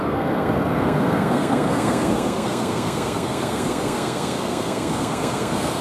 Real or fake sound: fake